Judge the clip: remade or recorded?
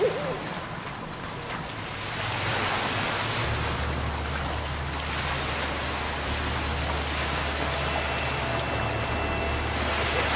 recorded